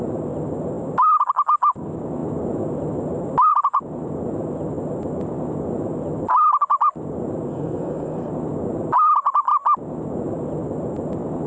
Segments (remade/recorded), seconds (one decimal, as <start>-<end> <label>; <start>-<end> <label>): 0.0-7.5 recorded; 7.5-8.3 remade; 8.3-11.5 recorded